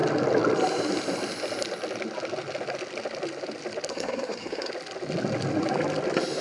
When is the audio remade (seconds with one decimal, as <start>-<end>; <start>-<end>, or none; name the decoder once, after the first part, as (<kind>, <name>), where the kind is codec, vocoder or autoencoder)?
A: 3.9-4.7 (codec, SNAC)